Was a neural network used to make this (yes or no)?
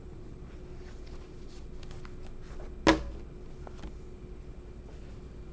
no